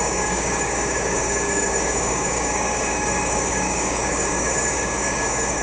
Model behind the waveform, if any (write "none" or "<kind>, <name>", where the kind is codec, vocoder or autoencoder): codec, DAC